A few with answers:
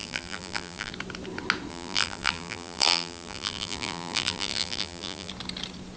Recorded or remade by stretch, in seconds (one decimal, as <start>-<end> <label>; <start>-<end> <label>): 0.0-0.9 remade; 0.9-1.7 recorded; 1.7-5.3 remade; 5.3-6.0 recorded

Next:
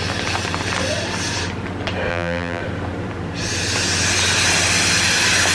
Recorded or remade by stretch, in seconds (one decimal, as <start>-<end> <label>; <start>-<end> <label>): 0.0-2.1 recorded; 2.1-2.6 remade; 2.6-5.5 recorded

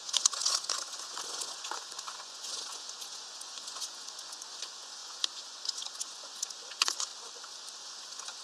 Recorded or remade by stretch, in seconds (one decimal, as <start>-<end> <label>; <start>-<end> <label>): 0.0-7.1 remade; 7.1-7.8 recorded; 7.8-8.4 remade

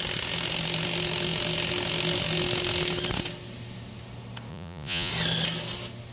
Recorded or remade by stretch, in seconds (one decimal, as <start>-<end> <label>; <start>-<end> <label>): 0.0-4.5 recorded; 4.5-5.1 remade; 5.1-6.1 recorded

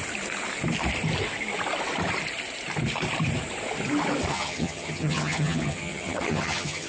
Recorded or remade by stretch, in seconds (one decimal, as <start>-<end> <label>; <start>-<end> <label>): 0.0-4.3 recorded; 4.3-6.9 remade